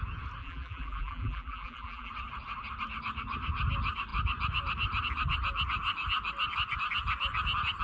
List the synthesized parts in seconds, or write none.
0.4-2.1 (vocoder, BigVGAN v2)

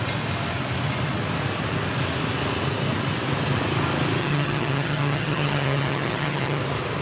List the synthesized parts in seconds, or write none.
4.2-6.6 (vocoder, HiFi-GAN)

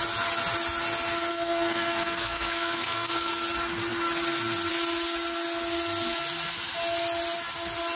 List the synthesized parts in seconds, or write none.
1.3-3.3 (codec, SNAC)

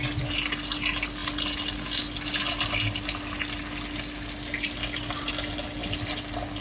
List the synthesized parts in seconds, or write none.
none